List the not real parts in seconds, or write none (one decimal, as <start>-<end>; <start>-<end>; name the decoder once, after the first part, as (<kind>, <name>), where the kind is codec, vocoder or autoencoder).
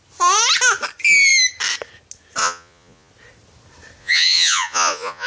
2.4-3.1 (vocoder, Vocos); 4.0-5.3